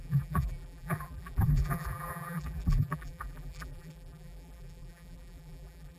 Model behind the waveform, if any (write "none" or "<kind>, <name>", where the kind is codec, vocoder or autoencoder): vocoder, BigVGAN v2